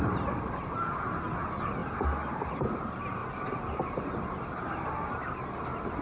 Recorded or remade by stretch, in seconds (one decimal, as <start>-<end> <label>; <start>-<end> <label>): 0.0-6.0 recorded